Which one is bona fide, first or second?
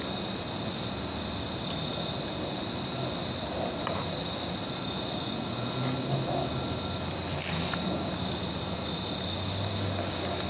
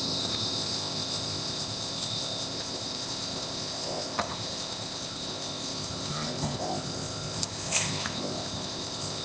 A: first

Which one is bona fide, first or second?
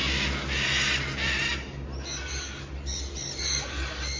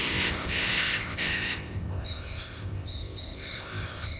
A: first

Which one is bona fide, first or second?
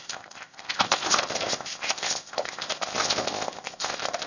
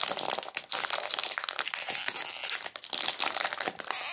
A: second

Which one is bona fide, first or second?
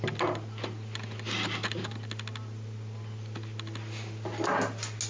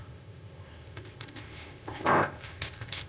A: first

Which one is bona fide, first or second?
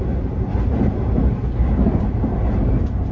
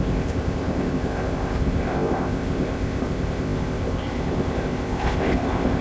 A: first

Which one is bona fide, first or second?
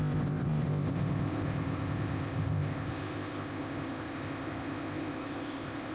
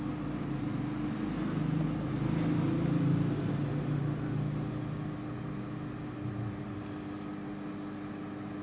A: second